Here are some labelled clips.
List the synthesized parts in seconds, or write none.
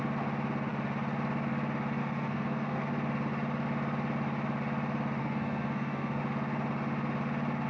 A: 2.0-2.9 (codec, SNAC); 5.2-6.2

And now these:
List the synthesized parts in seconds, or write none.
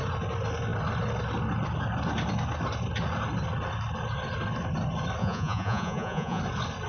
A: 5.2-6.4 (vocoder, Vocos)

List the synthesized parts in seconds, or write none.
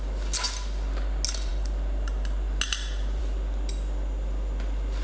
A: none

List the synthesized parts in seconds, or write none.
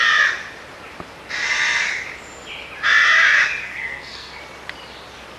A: 3.6-4.4 (codec, SNAC)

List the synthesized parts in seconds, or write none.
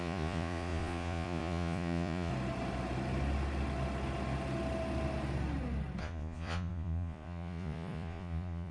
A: 0.0-2.3 (vocoder, Vocos); 6.0-8.7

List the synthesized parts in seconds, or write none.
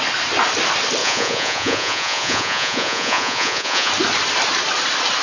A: 1.0-3.9 (vocoder, Vocos)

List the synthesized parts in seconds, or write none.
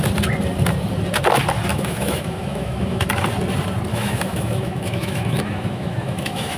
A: 1.7-3.1 (autoencoder, DAC-VAE); 3.9-6.6